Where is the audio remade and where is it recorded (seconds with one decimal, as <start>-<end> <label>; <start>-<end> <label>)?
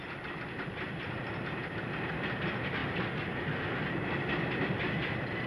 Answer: 0.0-5.5 recorded